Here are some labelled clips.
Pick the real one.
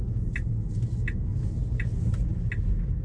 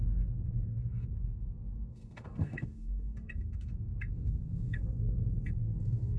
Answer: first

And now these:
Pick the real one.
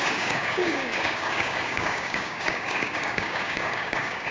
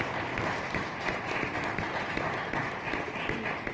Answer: second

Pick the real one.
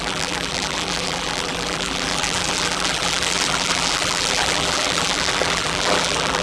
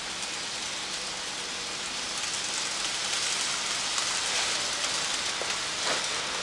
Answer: second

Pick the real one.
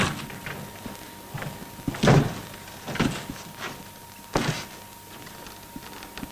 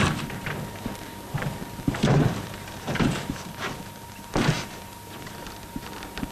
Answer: first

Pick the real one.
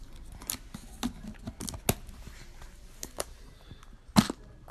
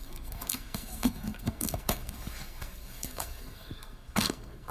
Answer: first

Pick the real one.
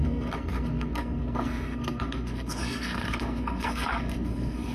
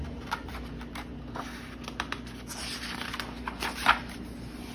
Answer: second